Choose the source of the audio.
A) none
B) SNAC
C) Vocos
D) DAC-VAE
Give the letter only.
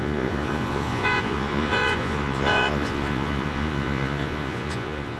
C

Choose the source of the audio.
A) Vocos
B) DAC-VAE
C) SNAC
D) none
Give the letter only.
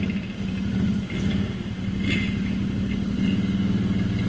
D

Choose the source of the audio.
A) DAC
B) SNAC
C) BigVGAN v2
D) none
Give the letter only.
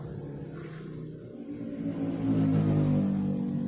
D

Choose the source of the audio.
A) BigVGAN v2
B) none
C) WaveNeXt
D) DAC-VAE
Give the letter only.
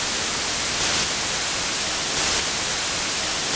B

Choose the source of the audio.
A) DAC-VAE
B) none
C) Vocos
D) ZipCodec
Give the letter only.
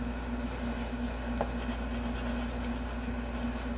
B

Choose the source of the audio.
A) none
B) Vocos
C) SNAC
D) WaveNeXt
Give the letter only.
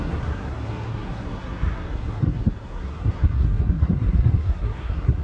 C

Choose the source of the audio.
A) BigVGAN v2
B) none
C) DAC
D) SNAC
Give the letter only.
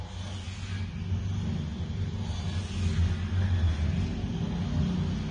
B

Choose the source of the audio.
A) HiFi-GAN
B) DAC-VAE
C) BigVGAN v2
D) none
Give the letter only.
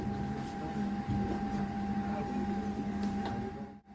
D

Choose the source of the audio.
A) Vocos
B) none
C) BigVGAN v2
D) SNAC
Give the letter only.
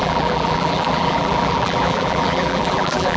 C